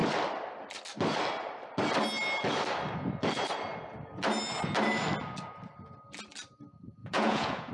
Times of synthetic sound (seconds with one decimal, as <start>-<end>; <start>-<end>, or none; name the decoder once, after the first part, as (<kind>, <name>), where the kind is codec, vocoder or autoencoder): 7.0-7.7 (vocoder, Vocos)